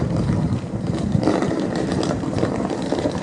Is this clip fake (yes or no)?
yes